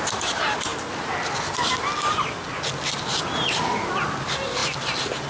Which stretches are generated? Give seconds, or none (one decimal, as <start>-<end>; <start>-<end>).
none